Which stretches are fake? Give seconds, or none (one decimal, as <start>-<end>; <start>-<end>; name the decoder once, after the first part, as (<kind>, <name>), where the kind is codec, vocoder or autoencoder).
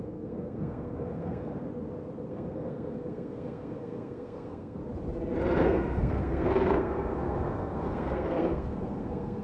0.0-1.5 (codec, SNAC); 2.3-4.8; 5.6-9.4